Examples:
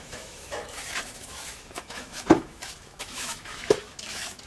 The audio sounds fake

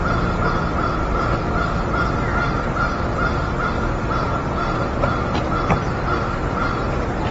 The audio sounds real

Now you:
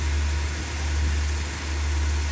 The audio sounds real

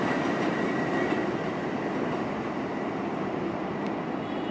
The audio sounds real